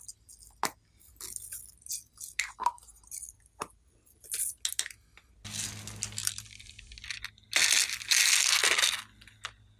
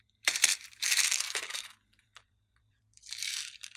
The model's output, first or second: second